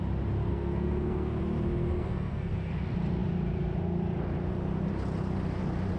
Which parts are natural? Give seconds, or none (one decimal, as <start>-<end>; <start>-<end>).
0.0-0.5; 1.4-1.8; 2.7-6.0